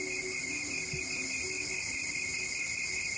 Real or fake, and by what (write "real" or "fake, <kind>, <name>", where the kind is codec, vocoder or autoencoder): real